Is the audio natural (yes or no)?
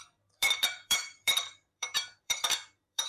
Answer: no